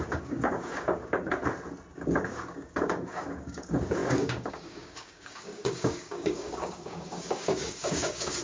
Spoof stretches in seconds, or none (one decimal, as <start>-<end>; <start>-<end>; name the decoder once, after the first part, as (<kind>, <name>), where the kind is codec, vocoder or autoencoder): 0.0-1.4 (codec, DAC); 1.9-8.4